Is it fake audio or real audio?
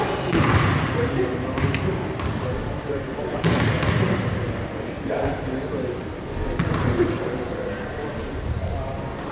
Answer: fake